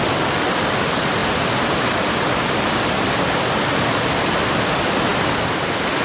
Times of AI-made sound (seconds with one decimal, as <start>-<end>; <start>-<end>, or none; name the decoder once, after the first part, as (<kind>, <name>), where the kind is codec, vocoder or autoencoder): none

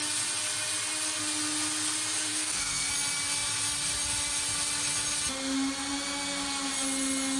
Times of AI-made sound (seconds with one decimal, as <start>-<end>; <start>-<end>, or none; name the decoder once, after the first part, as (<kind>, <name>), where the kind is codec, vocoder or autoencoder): 2.3-2.9 (codec, SNAC)

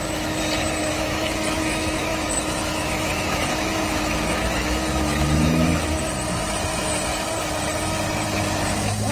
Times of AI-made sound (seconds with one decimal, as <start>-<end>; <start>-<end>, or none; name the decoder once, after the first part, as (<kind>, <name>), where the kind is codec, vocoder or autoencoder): 0.8-6.0 (autoencoder, DAC-VAE)

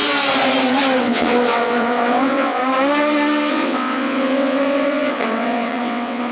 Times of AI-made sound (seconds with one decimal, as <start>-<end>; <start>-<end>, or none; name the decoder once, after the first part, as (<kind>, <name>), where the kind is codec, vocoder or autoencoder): 1.0-2.6 (vocoder, WaveNeXt); 3.5-6.3

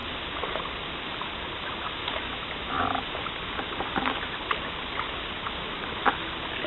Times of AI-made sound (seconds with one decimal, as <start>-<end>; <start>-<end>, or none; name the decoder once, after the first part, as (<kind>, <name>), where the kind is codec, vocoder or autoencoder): none

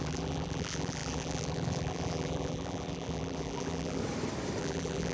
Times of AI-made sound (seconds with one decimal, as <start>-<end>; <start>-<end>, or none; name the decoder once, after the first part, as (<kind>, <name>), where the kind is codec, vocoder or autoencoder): 0.0-4.0 (vocoder, BigVGAN v2); 4.6-5.1

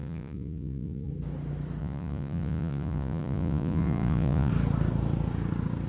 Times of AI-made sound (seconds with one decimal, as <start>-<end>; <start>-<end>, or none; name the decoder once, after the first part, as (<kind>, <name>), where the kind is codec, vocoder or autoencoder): 0.0-1.1 (vocoder, Vocos); 1.8-4.5